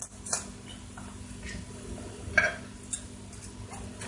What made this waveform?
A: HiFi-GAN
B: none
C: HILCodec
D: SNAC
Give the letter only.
B